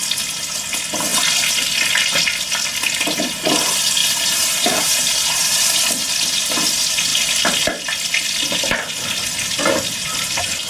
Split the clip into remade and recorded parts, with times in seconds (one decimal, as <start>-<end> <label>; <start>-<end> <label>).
0.0-4.0 recorded; 4.0-5.6 remade; 5.6-10.7 recorded